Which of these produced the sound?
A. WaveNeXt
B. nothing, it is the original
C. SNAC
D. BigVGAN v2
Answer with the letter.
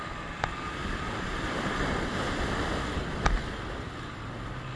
D